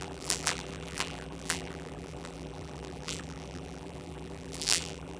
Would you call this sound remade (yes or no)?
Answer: yes